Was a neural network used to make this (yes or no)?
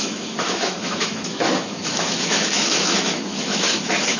yes